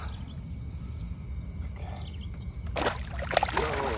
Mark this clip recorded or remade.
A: recorded